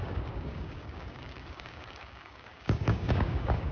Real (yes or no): no